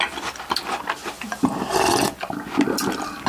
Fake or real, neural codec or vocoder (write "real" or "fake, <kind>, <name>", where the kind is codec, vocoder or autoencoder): real